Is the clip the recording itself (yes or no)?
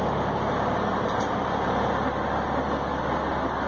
yes